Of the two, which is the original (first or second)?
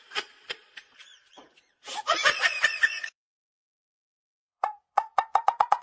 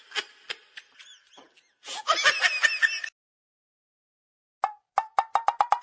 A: second